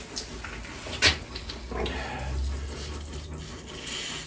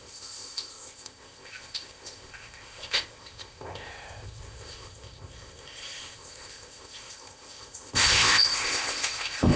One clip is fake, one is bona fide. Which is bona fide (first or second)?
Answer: first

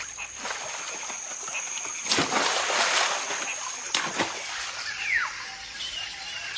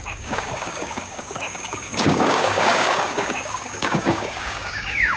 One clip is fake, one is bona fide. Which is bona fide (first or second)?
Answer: first